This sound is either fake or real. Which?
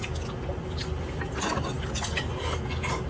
real